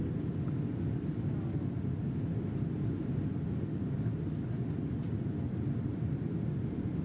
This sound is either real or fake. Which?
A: real